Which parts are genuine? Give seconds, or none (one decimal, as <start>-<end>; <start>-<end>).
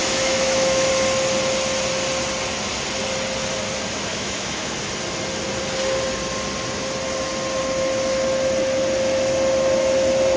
0.9-4.1; 4.7-10.4